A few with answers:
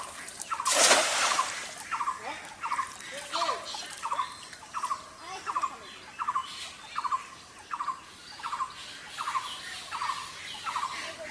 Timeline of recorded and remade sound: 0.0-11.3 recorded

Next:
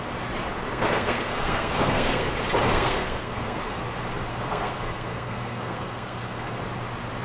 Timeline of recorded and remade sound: 0.0-0.7 recorded; 0.7-2.3 remade; 2.3-2.7 recorded; 2.7-3.8 remade; 3.8-4.3 recorded; 4.3-6.6 remade; 6.6-7.2 recorded

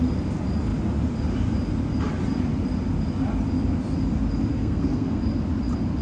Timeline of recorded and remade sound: 0.0-4.5 recorded; 4.5-5.2 remade; 5.2-6.0 recorded

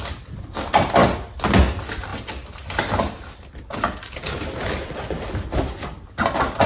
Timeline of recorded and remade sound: 0.0-6.7 recorded

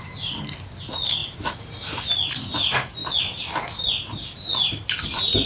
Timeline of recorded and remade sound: 0.0-5.5 recorded